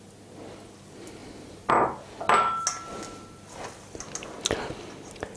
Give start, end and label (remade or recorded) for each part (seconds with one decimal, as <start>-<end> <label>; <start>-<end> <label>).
0.0-1.2 recorded; 1.2-1.7 remade; 1.7-5.4 recorded